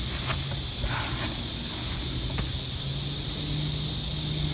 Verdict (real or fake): real